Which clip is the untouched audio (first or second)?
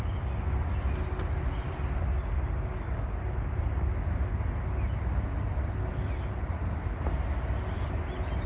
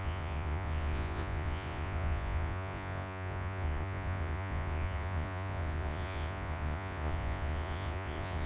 first